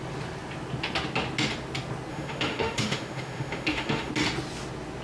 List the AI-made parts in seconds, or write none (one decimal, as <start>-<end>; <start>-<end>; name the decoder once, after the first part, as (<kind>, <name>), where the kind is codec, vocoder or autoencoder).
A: 2.1-4.1 (autoencoder, DAC-VAE)